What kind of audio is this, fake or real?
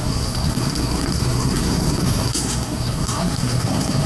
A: fake